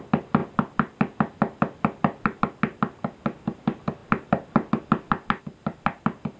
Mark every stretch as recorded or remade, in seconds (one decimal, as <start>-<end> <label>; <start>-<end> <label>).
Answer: 0.0-6.4 recorded